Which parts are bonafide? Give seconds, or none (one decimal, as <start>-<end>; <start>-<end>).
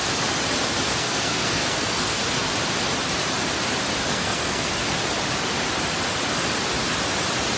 0.0-0.9; 2.2-4.1; 4.7-7.6